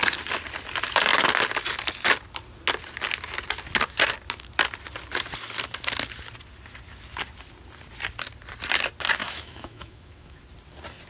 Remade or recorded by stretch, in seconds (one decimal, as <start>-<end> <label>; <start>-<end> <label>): 0.0-9.2 recorded; 9.2-10.4 remade; 10.4-11.1 recorded

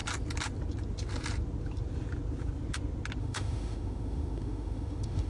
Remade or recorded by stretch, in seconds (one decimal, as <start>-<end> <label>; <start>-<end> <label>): 0.0-3.2 recorded; 3.2-5.3 remade

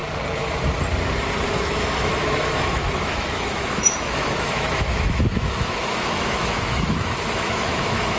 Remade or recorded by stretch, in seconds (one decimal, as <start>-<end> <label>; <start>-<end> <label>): 0.0-1.6 recorded; 1.6-8.2 remade